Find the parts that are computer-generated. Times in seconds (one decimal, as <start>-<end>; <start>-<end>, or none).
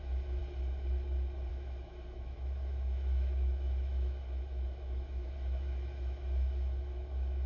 0.0-0.4; 1.5-7.5